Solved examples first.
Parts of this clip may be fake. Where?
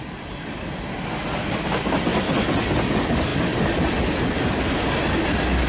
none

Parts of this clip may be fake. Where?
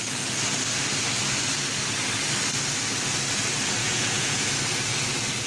3.8-4.5 (vocoder, Vocos)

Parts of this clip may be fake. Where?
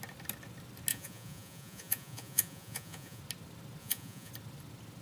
0.9-3.2 (vocoder, Vocos); 3.8-4.3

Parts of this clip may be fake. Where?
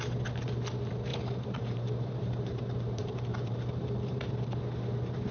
1.1-4.3 (vocoder, BigVGAN v2)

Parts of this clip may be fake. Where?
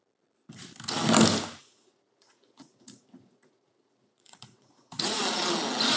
1.6-5.2 (vocoder, Vocos)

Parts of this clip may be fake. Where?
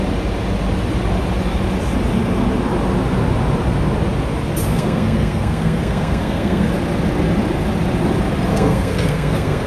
4.7-6.7 (codec, SNAC); 8.5-9.7